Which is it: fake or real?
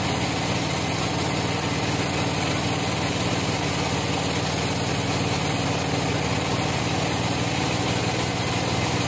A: real